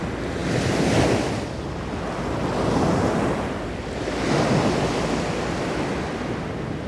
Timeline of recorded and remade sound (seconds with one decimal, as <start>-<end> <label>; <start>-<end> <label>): 0.0-6.9 recorded